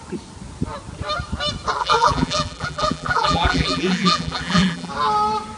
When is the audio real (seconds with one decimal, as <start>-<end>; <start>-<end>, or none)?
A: 0.0-1.8; 4.9-5.6